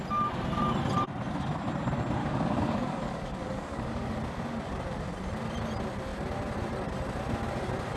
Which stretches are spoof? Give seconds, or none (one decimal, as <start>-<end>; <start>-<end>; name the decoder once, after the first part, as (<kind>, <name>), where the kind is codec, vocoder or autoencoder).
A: 2.2-4.1 (codec, DAC)

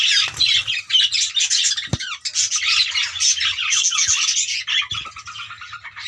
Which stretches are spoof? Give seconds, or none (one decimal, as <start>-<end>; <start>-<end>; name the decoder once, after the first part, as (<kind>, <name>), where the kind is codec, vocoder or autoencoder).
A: none